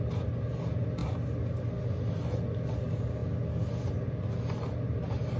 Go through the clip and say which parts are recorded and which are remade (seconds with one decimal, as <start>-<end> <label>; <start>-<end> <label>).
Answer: 0.0-5.4 recorded